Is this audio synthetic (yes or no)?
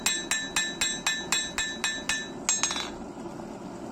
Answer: no